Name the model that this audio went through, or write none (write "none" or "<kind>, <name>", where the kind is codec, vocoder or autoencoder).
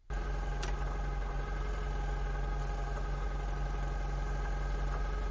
none